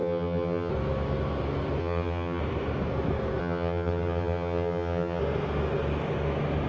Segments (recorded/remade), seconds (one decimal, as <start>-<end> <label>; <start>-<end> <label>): 0.0-0.7 remade; 0.7-1.8 recorded; 1.8-2.4 remade; 2.4-3.4 recorded; 3.4-5.2 remade; 5.2-6.7 recorded